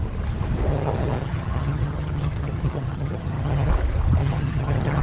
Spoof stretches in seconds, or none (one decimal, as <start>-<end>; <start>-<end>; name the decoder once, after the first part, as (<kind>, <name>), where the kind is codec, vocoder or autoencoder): 0.7-3.7 (vocoder, HiFi-GAN); 4.2-5.0